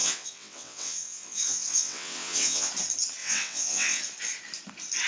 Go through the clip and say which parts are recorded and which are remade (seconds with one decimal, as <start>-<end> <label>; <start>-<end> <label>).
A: 0.0-2.7 remade; 2.7-3.2 recorded; 3.2-4.0 remade; 4.0-5.1 recorded

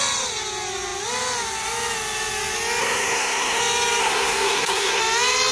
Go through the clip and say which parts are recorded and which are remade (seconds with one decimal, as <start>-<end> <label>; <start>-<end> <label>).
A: 0.0-2.8 recorded; 2.8-3.6 remade; 3.6-4.0 recorded; 4.0-5.0 remade; 5.0-5.5 recorded

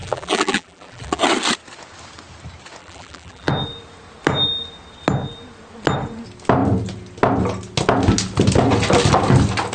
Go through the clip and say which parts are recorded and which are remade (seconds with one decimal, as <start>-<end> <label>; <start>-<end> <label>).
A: 0.0-1.2 remade; 1.2-2.8 recorded; 2.8-3.5 remade; 3.5-9.7 recorded

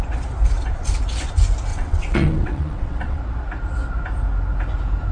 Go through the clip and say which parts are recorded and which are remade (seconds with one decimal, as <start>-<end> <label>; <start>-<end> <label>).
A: 0.0-1.7 recorded; 1.7-3.2 remade; 3.2-5.1 recorded

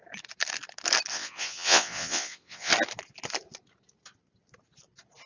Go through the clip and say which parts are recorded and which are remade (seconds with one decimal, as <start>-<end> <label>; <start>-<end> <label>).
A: 0.0-1.1 recorded; 1.1-2.7 remade; 2.7-5.3 recorded

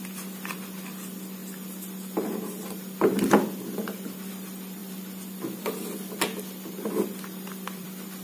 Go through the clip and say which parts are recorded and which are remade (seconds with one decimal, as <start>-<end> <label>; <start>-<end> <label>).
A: 0.0-1.4 remade; 1.4-4.3 recorded; 4.3-8.2 remade

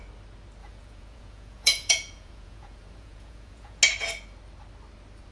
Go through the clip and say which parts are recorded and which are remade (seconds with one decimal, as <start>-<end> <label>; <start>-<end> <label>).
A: 0.0-0.6 recorded; 0.6-3.8 remade; 3.8-5.3 recorded